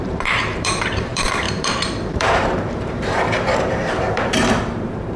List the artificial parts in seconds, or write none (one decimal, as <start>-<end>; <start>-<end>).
0.0-5.2